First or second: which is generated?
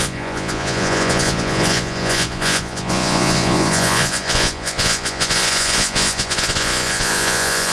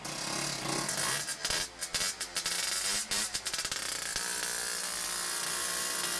first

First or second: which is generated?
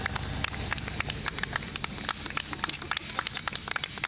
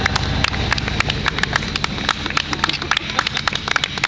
first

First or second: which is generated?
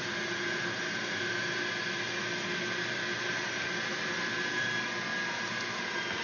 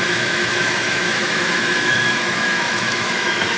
second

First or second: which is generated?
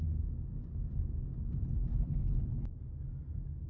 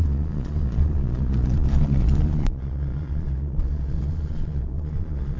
second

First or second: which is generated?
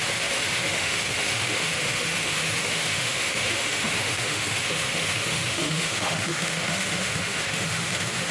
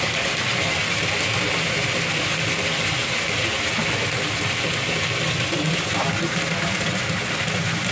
first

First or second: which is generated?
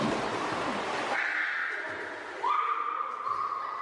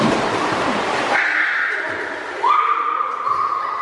second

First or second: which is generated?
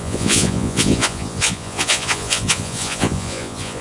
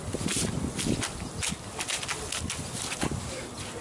first